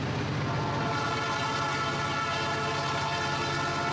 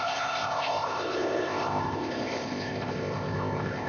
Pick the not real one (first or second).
second